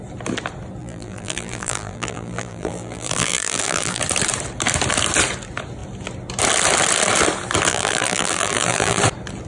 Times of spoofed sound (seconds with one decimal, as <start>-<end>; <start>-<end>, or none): 0.8-4.0; 7.7-9.0